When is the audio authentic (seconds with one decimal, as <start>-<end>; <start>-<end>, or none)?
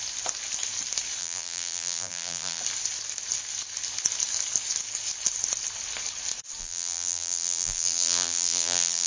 0.0-1.2; 2.6-6.6